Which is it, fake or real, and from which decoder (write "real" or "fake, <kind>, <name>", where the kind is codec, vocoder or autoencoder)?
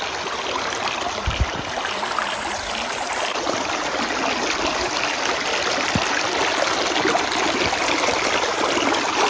real